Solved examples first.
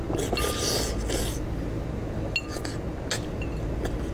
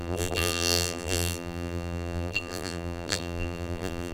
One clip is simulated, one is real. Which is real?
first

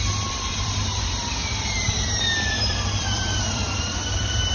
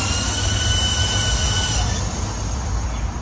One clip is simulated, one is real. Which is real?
second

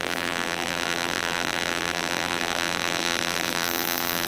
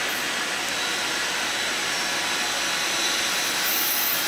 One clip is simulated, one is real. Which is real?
second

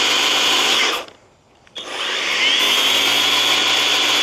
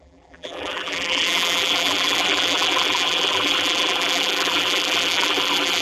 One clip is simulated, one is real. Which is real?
first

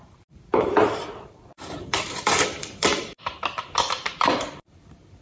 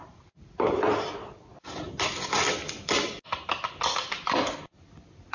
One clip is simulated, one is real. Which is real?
second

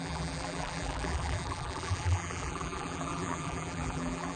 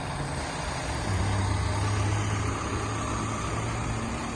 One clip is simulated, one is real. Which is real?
second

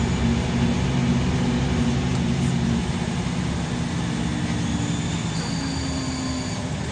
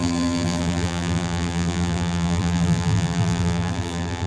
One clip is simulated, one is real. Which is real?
first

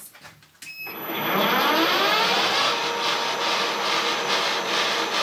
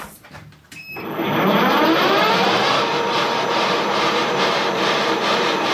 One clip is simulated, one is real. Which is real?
first